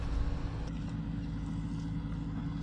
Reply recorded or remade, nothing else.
recorded